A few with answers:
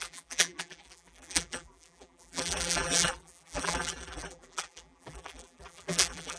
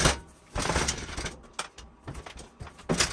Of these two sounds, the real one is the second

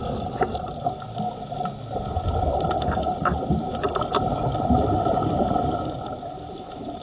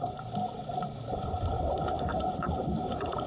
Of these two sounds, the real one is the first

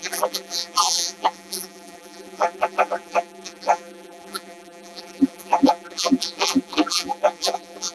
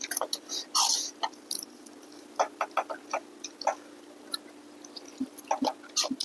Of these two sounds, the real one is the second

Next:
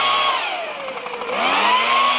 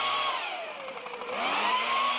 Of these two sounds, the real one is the first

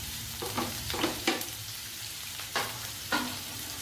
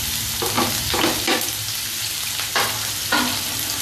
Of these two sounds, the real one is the second